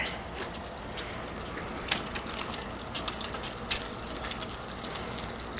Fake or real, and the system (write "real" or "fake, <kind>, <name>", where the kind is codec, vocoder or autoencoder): real